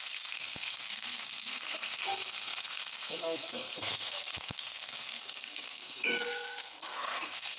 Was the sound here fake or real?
fake